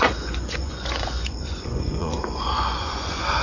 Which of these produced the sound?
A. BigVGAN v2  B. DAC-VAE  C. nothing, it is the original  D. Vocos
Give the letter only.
D